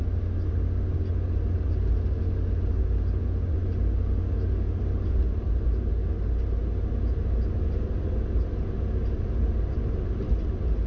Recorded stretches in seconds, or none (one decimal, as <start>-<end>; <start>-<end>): 0.0-10.9